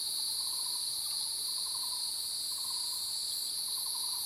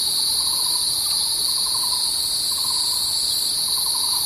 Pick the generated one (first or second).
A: second